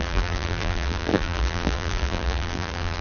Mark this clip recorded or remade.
remade